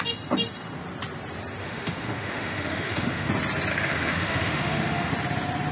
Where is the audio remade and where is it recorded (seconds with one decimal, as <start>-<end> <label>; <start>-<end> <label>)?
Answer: 0.0-1.6 recorded; 1.6-3.3 remade; 3.3-3.7 recorded; 3.7-5.1 remade; 5.1-5.7 recorded